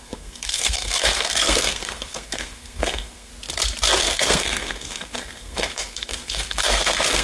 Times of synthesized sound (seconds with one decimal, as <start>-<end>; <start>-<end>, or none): 0.0-3.3; 4.0-7.2